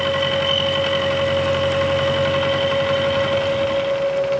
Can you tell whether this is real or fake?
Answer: real